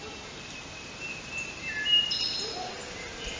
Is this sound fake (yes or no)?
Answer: no